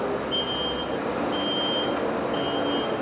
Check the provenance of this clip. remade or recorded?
recorded